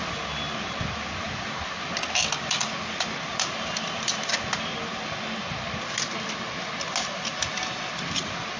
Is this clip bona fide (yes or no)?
yes